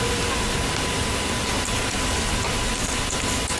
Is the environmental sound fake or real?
real